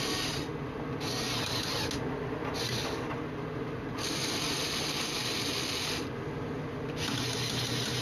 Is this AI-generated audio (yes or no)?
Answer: no